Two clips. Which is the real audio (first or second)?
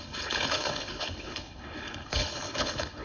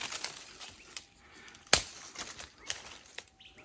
second